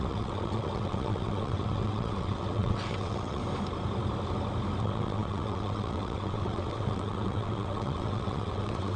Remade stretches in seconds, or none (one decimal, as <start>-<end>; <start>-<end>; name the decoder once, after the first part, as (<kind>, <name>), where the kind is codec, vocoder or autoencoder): 0.0-3.4 (vocoder, WaveNeXt); 4.8-9.0